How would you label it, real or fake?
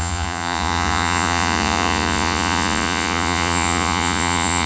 fake